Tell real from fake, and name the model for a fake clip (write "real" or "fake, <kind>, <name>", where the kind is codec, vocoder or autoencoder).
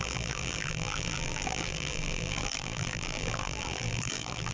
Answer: fake, vocoder, BigVGAN v2